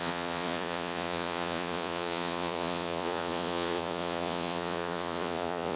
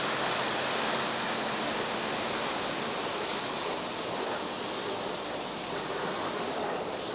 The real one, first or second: second